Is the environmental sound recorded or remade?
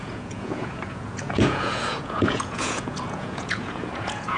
remade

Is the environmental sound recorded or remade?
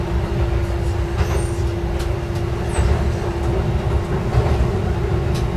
recorded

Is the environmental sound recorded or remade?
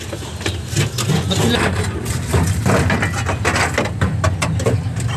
recorded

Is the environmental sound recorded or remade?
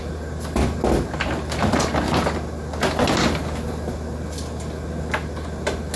recorded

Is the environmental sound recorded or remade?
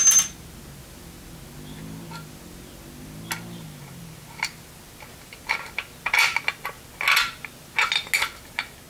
recorded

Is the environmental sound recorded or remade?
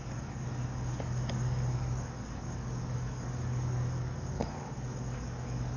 remade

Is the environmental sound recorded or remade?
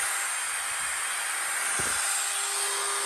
recorded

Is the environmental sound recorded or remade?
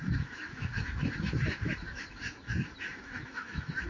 remade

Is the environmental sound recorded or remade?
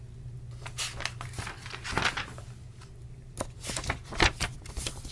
recorded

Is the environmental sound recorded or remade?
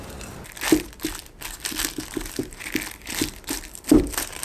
recorded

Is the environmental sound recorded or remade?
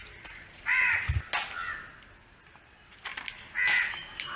recorded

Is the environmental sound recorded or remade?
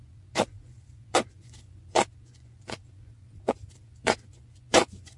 remade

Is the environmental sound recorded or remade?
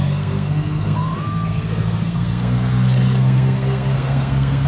remade